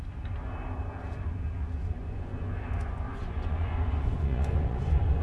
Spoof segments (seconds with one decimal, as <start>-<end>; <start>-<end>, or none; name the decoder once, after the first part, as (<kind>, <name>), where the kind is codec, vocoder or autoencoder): 2.0-5.2 (vocoder, Vocos)